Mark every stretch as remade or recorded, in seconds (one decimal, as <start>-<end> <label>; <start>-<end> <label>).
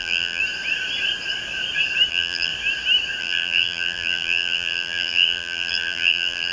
0.0-0.4 remade; 0.4-2.1 recorded; 2.1-2.5 remade; 2.5-3.2 recorded; 3.2-6.5 remade